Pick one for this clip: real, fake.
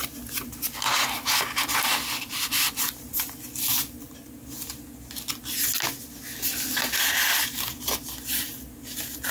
real